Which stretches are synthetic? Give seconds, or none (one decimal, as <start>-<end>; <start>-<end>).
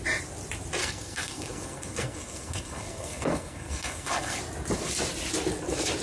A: 0.8-4.4